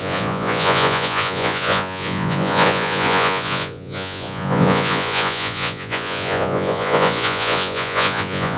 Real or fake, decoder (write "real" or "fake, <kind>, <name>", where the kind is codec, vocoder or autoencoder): fake, vocoder, Vocos